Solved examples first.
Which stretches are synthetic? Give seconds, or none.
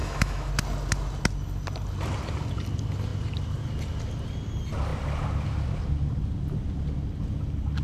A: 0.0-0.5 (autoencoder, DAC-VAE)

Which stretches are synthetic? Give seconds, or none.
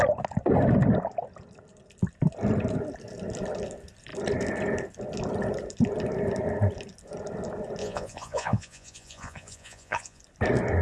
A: 7.8-10.2 (vocoder, Vocos)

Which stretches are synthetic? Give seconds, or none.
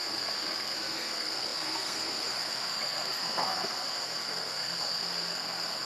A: 0.0-5.9 (codec, SNAC)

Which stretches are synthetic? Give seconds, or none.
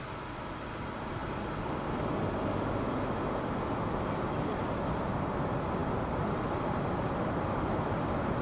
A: none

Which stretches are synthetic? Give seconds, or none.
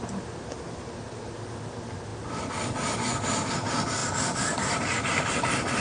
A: none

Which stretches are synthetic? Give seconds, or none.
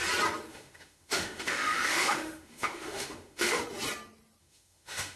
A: 0.5-3.6 (autoencoder, DAC-VAE); 4.4-5.2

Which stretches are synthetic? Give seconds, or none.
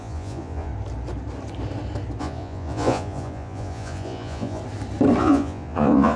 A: 0.0-0.7 (vocoder, Vocos); 2.2-4.6; 5.2-6.2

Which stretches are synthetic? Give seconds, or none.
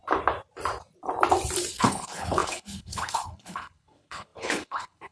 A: 1.7-5.1 (codec, HILCodec)